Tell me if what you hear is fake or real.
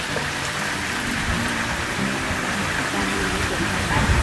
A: fake